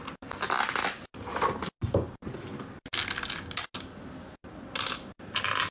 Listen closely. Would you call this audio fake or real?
real